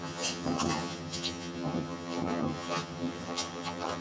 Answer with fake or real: fake